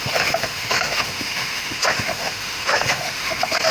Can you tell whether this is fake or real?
fake